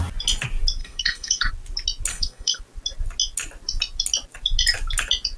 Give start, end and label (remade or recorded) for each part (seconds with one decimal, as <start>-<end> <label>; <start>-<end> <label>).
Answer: 0.0-0.8 recorded; 0.8-1.5 remade; 1.5-2.1 recorded; 2.1-2.6 remade; 2.6-5.4 recorded